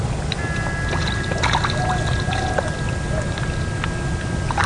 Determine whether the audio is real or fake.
real